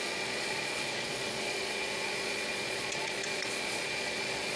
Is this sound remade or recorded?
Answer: remade